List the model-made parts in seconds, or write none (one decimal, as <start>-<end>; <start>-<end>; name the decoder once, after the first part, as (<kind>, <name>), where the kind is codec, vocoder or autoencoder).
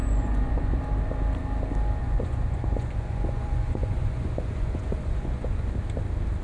0.0-0.8 (vocoder, Vocos); 2.0-5.8